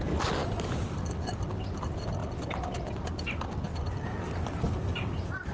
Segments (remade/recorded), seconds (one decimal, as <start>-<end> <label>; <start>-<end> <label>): 0.0-5.5 recorded